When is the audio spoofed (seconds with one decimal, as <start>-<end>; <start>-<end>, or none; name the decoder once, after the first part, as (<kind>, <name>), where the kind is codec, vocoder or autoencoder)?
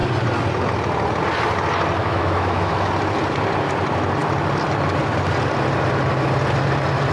2.0-2.9 (autoencoder, DAC-VAE)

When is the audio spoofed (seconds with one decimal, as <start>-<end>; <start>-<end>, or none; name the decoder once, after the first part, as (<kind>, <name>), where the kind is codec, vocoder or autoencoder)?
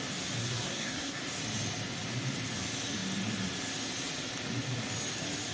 0.4-1.2 (codec, SNAC)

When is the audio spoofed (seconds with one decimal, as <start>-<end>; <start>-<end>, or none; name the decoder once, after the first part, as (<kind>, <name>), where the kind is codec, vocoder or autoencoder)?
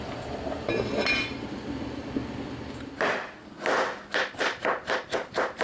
none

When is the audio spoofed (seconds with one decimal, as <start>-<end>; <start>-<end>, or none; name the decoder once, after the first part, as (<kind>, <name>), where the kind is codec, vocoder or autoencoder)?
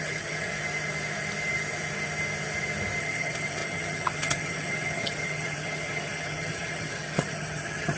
0.0-0.5 (vocoder, HiFi-GAN); 3.0-8.0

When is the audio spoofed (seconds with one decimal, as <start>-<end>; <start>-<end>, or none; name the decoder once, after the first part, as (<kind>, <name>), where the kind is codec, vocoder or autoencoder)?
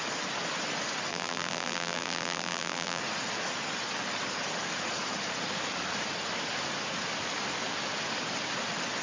1.1-3.0 (vocoder, BigVGAN v2)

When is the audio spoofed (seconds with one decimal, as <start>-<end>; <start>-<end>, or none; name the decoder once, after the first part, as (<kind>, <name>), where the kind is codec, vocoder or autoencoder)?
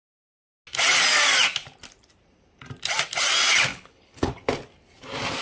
3.7-4.3 (codec, HILCodec)